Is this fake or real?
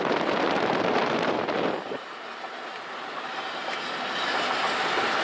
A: fake